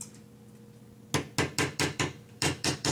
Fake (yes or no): no